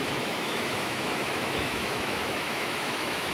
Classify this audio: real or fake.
fake